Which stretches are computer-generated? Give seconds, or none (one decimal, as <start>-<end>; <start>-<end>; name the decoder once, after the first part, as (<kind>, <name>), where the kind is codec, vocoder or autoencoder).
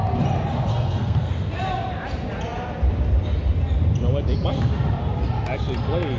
0.7-1.3 (codec, SNAC)